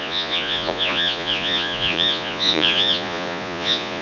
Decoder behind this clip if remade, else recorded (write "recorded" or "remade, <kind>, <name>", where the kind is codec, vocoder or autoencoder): remade, vocoder, Vocos